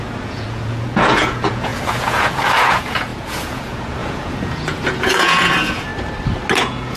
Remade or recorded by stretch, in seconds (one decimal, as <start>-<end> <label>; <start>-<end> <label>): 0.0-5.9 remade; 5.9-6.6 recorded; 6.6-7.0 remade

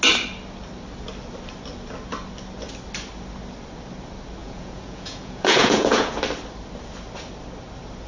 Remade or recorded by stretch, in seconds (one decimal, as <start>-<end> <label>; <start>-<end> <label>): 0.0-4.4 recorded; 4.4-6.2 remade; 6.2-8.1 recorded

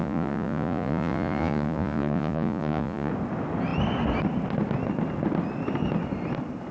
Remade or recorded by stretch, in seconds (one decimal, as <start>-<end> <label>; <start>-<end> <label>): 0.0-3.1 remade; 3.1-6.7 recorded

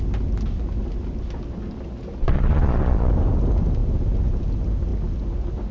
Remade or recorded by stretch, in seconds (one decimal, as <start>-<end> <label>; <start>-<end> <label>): 0.0-2.2 recorded; 2.2-3.1 remade; 3.1-5.7 recorded